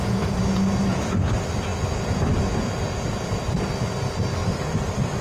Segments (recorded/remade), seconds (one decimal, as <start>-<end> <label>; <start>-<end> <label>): 0.0-4.4 recorded; 4.4-5.2 remade